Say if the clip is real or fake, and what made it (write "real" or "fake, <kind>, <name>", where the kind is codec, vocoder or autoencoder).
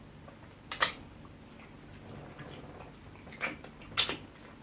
real